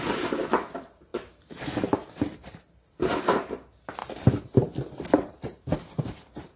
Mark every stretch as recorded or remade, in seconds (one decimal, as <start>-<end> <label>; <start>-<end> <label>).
0.0-4.0 remade; 4.0-5.0 recorded; 5.0-6.6 remade